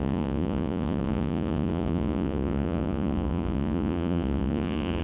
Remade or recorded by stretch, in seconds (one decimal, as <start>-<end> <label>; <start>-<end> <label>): 0.0-5.0 remade

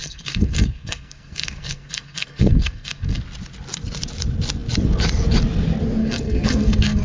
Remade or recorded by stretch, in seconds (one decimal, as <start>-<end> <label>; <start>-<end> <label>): 0.0-3.2 remade; 3.2-6.0 recorded; 6.0-7.0 remade

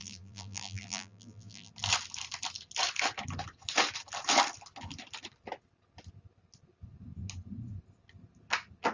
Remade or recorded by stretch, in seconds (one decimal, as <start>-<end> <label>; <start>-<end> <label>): 0.0-1.7 remade; 1.7-8.9 recorded

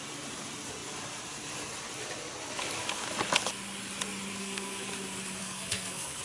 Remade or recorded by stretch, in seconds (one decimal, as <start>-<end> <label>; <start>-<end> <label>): 0.0-4.4 recorded; 4.4-4.9 remade; 4.9-5.4 recorded; 5.4-6.2 remade